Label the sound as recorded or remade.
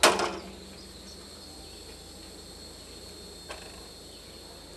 recorded